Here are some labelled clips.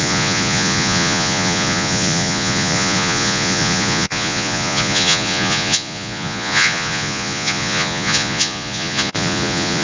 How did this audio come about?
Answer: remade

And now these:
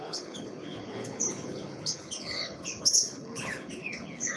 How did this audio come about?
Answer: remade